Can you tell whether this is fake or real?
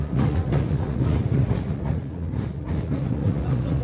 fake